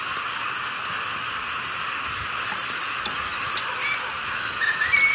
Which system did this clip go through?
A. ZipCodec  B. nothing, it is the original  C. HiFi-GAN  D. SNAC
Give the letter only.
B